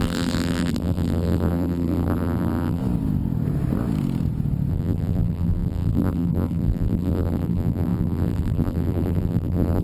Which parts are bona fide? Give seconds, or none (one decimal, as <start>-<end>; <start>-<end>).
2.8-4.7